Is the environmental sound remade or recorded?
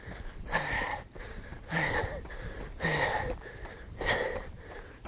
remade